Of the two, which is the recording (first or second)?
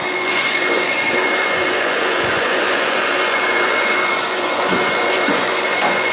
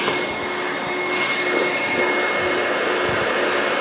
second